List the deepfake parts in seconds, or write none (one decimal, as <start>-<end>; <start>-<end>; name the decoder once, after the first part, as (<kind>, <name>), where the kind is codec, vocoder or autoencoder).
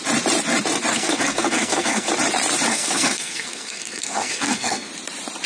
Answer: 0.9-2.1 (codec, SNAC); 2.7-4.9